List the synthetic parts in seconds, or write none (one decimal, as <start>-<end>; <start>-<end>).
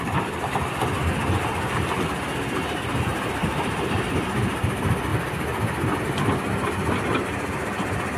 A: 3.4-4.1